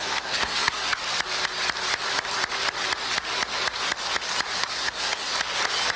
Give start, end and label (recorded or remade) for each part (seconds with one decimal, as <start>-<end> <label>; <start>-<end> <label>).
0.0-1.0 remade; 1.0-4.6 recorded; 4.6-5.3 remade; 5.3-6.0 recorded